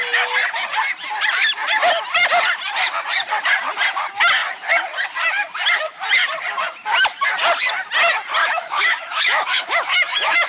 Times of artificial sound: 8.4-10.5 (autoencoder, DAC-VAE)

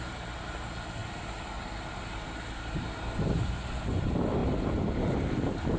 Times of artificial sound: none

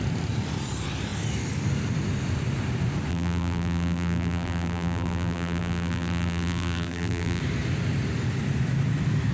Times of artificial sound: 3.1-7.4 (vocoder, BigVGAN v2)

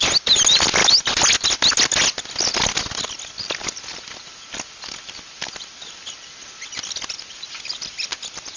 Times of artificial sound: none